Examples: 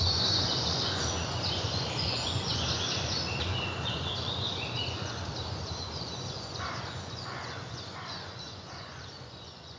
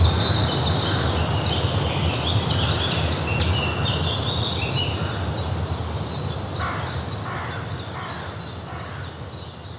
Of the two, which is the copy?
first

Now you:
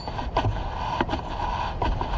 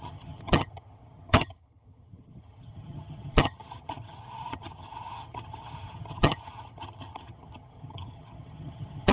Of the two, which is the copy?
second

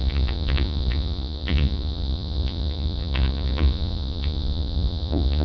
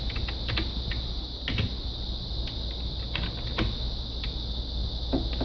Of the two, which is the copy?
first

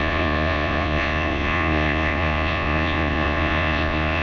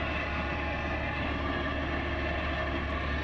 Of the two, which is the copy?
first